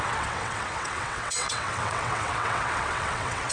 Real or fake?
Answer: fake